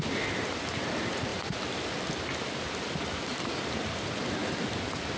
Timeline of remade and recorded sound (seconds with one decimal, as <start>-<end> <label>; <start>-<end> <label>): 0.0-5.2 recorded